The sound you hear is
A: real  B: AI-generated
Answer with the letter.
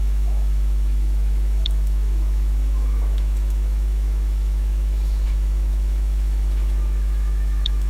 B